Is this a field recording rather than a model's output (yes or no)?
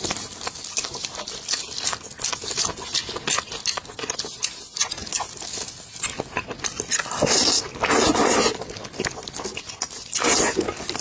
yes